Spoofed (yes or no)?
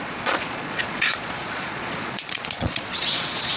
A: yes